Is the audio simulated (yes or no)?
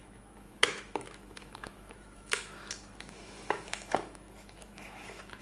yes